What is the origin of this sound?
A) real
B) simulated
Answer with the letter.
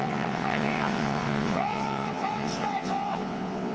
B